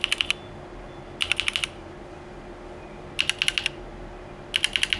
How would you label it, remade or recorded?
recorded